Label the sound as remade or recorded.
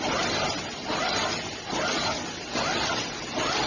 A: recorded